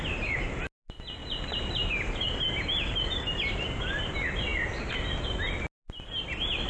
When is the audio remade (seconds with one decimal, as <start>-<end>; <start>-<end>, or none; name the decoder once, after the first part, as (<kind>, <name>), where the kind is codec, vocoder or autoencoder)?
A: 1.2-2.2 (vocoder, BigVGAN v2)